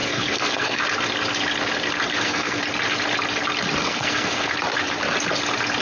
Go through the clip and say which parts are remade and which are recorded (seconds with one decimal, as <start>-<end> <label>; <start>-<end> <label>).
0.0-0.8 remade; 0.8-2.1 recorded; 2.1-2.6 remade; 2.6-3.8 recorded; 3.8-4.5 remade; 4.5-5.8 recorded